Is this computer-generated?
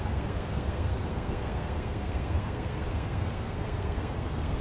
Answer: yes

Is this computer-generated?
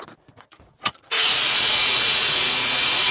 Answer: yes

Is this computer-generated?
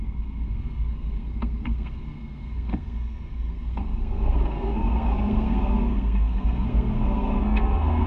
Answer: yes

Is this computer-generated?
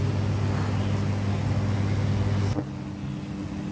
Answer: no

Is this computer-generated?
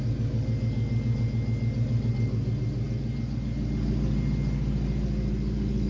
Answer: no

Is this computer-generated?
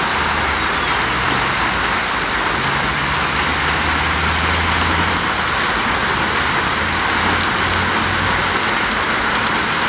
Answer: no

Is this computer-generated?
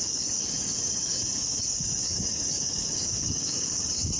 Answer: yes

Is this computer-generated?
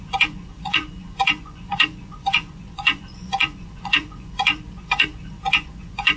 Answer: yes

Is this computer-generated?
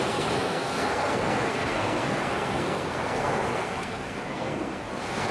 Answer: yes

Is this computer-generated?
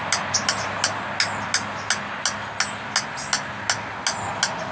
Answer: no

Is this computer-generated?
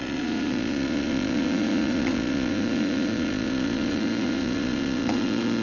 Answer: yes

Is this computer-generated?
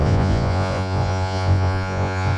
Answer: yes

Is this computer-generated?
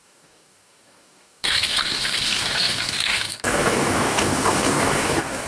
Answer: yes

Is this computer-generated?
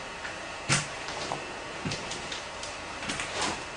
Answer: yes